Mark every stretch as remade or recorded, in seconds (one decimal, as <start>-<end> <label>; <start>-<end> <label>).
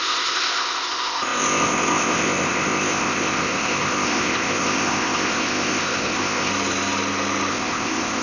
0.0-6.5 remade; 6.5-7.5 recorded; 7.5-8.2 remade